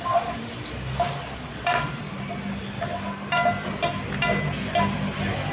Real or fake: real